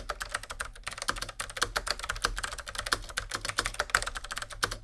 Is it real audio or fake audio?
real